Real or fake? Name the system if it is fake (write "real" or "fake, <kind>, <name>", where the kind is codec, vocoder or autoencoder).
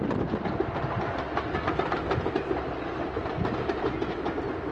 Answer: real